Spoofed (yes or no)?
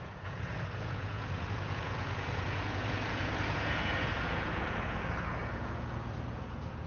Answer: yes